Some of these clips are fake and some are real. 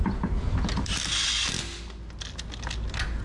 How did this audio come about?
real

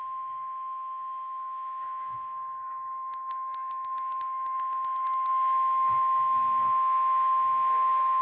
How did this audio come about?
fake